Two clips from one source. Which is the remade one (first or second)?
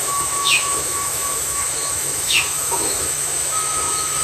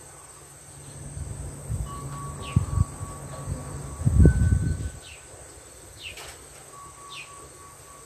first